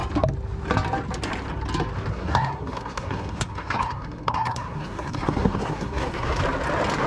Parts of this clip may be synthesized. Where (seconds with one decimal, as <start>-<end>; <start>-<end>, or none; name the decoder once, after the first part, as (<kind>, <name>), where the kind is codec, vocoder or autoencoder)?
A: 2.1-6.4 (codec, SNAC)